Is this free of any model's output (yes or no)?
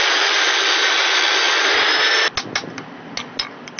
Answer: yes